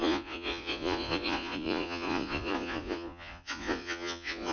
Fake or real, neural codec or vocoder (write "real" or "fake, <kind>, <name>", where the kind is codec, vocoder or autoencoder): fake, vocoder, Vocos